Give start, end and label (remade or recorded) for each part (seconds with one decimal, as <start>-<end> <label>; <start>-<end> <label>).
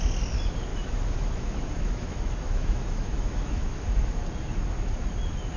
0.0-0.7 recorded; 0.7-4.1 remade; 4.1-5.6 recorded